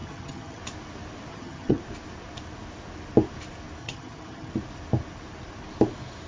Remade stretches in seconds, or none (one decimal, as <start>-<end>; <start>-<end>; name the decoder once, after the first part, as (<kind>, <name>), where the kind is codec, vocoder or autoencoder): 0.0-0.6 (vocoder, HiFi-GAN); 1.3-1.8; 3.8-4.5